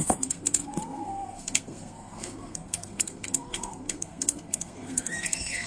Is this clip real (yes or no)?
no